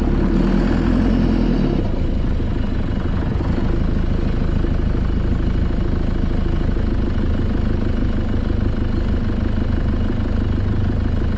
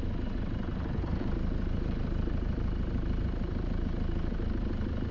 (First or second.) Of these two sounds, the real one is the first